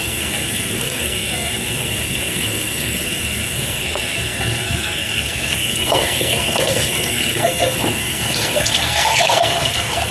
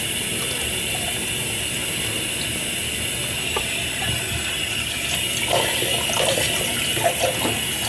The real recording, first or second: second